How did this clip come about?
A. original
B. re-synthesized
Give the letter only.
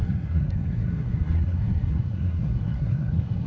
B